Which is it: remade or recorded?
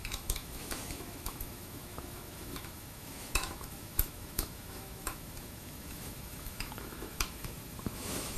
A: remade